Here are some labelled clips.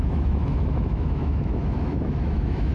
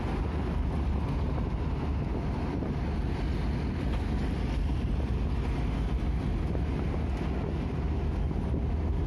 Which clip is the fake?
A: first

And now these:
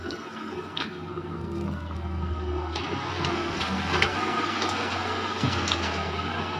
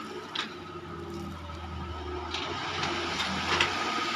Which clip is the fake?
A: first